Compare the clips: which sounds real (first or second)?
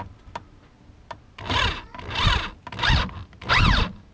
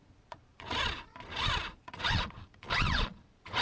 first